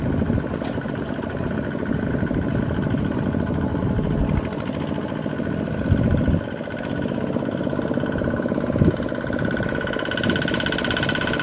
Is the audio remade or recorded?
recorded